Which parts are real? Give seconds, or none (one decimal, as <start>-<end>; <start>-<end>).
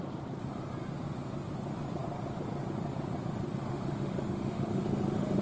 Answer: 0.0-3.7